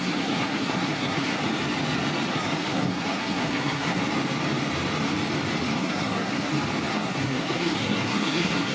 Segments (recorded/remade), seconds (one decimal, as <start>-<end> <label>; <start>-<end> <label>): 0.0-1.4 remade; 1.4-2.3 recorded; 2.3-4.0 remade; 4.0-5.8 recorded; 5.8-6.5 remade; 6.5-6.9 recorded; 6.9-8.7 remade